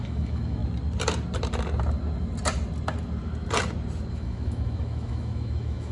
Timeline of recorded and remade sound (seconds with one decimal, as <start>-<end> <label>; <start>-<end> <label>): 0.0-0.6 remade; 0.6-4.1 recorded; 4.1-5.9 remade